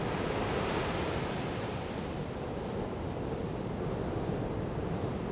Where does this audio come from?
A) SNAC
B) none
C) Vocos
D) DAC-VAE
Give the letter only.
B